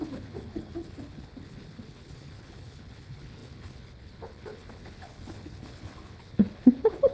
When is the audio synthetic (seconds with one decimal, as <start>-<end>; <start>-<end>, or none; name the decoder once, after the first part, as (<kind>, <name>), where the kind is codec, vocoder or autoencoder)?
0.0-7.1 (codec, HILCodec)